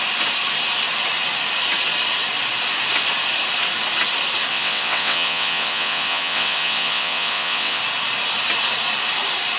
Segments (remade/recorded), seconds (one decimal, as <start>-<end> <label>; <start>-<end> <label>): 0.0-4.5 recorded; 4.5-7.8 remade; 7.8-9.6 recorded